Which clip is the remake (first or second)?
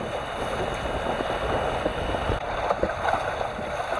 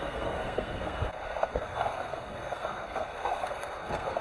second